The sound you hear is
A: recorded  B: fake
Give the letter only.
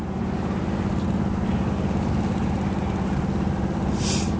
A